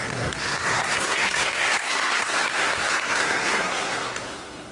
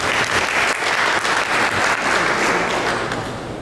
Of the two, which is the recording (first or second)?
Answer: second